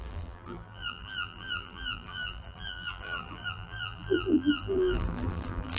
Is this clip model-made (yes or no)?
yes